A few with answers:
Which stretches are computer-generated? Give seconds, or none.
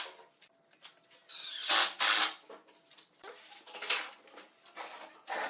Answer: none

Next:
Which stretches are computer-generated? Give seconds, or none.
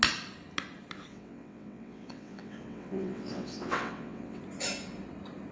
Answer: 1.1-4.4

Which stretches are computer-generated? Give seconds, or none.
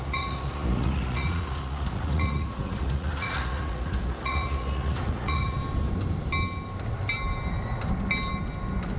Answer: 0.0-5.6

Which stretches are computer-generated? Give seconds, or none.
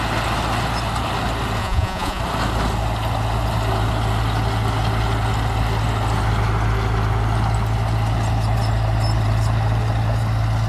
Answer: 1.6-2.2